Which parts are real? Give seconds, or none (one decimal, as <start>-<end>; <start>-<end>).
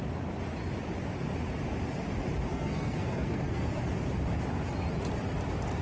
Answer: 0.0-2.5; 3.8-5.8